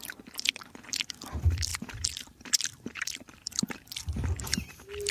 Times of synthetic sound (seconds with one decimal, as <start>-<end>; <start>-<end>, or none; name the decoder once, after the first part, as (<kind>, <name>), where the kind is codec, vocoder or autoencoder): 0.0-5.1 (vocoder, BigVGAN v2)